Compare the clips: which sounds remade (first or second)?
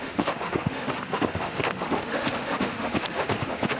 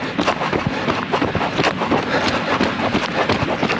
first